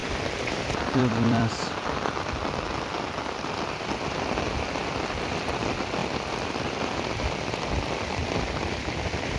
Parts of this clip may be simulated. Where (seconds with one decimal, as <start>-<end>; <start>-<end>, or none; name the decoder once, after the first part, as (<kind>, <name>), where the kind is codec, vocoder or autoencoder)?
0.0-9.4 (vocoder, BigVGAN v2)

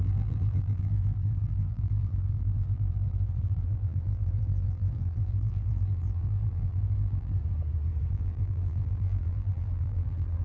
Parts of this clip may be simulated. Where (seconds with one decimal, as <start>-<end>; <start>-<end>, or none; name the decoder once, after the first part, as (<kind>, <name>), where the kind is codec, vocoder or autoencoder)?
0.0-7.4 (vocoder, BigVGAN v2); 8.1-10.4

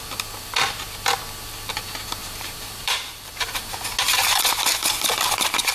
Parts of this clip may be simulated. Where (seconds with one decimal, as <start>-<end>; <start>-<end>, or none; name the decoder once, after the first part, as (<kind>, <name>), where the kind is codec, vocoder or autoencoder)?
2.2-3.8 (vocoder, BigVGAN v2)

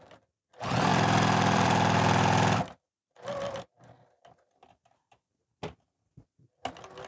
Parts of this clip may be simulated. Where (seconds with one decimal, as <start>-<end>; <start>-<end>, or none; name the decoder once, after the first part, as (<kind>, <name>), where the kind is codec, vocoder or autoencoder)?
0.9-4.7 (vocoder, BigVGAN v2)

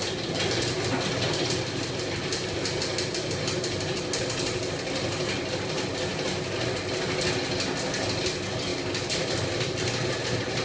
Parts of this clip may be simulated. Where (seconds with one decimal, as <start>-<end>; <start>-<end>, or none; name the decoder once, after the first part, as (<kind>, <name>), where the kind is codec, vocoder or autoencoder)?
8.7-10.2 (vocoder, BigVGAN v2)

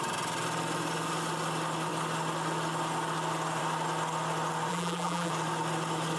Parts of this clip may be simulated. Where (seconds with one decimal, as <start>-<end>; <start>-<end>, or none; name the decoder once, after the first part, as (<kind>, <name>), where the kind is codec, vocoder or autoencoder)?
4.7-5.3 (vocoder, BigVGAN v2)

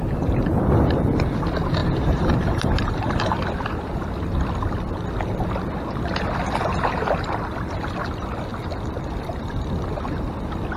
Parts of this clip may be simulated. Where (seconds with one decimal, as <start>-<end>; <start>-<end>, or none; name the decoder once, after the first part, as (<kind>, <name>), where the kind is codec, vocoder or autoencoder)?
1.8-3.3 (vocoder, BigVGAN v2)